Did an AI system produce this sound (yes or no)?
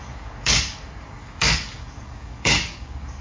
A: yes